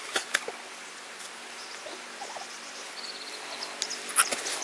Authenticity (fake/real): real